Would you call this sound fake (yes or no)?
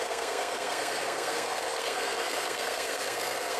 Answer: yes